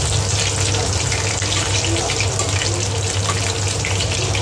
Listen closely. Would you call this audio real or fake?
real